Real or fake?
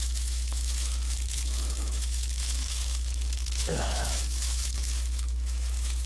fake